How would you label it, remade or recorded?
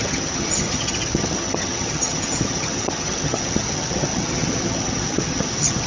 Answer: remade